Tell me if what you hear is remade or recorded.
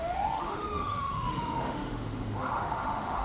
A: remade